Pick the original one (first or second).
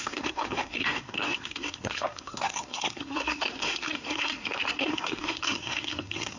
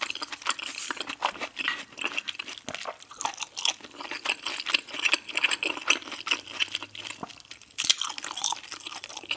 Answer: second